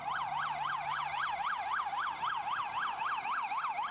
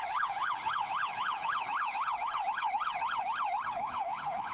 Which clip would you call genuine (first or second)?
first